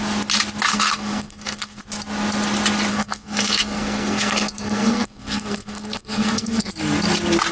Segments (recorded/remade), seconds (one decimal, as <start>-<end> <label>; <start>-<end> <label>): 0.0-0.7 recorded; 0.7-1.8 remade; 1.8-2.9 recorded; 2.9-6.7 remade; 6.7-7.5 recorded